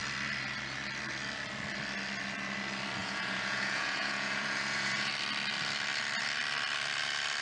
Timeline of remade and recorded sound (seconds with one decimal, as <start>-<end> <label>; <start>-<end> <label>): 0.0-3.0 recorded; 3.0-5.1 remade; 5.1-7.4 recorded